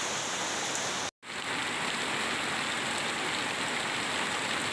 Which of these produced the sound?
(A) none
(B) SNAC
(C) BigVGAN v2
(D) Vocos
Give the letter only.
A